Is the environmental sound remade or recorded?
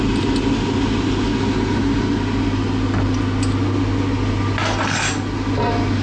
recorded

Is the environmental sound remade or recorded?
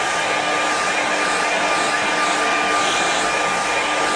recorded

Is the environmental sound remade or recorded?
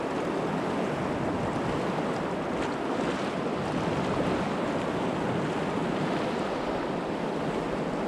recorded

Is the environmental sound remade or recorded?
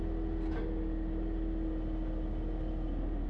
recorded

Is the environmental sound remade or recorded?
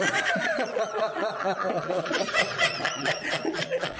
remade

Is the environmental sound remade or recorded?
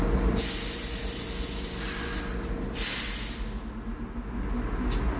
recorded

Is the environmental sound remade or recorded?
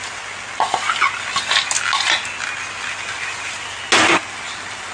recorded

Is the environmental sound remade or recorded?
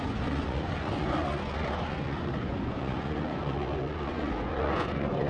remade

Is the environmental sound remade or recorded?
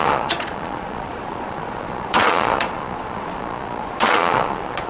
remade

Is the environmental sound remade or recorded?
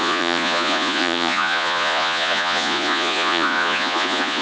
remade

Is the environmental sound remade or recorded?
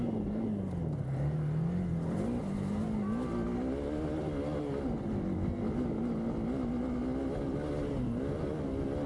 recorded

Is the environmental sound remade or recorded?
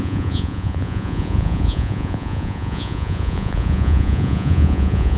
remade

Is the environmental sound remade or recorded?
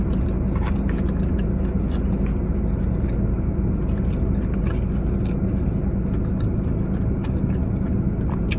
recorded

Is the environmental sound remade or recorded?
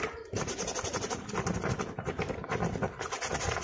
recorded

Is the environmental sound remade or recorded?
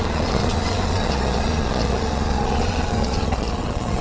remade